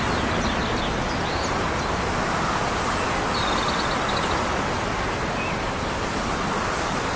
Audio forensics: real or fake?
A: real